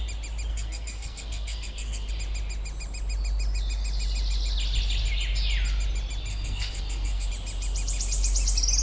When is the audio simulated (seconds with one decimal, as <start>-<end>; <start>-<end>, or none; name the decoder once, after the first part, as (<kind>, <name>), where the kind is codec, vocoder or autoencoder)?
0.5-2.1 (codec, SNAC); 6.3-7.3